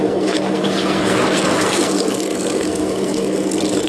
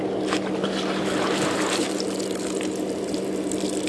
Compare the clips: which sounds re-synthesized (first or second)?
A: first